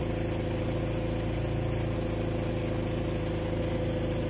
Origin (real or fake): real